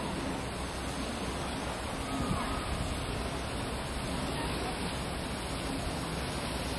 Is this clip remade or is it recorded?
recorded